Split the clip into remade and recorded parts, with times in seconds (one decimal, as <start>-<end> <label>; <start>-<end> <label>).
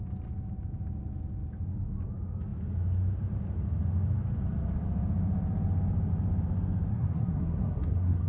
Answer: 0.0-6.9 recorded; 6.9-8.3 remade